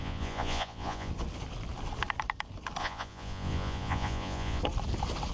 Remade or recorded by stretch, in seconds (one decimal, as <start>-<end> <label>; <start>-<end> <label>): 0.0-1.1 remade; 1.1-2.8 recorded; 2.8-4.6 remade; 4.6-5.3 recorded